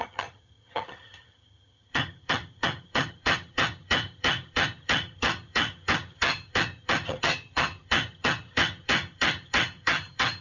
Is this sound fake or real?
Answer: fake